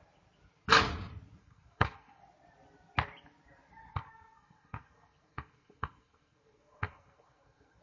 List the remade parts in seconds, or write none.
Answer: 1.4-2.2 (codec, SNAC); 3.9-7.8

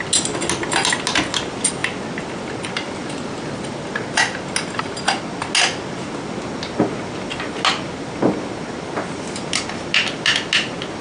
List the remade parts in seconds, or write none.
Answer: none

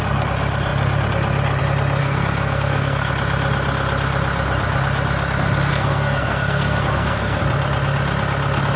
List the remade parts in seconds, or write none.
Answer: 2.0-3.1 (codec, SNAC); 5.7-7.4

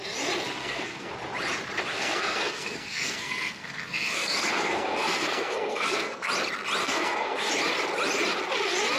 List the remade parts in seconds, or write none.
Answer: 0.6-1.1 (codec, SNAC); 1.9-6.3; 6.8-7.5

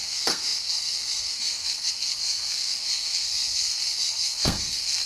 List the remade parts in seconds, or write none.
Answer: 0.0-5.1 (codec, SNAC)

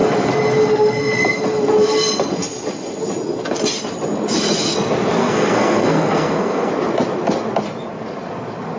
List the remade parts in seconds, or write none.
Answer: 5.2-6.7 (codec, SNAC)

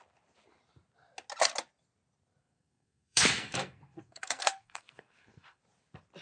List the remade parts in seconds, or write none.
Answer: 2.4-5.6 (codec, SNAC)

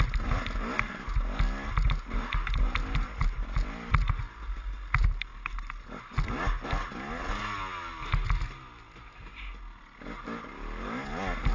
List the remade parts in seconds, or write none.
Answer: none